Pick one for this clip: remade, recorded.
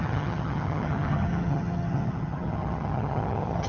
remade